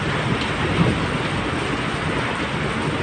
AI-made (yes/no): no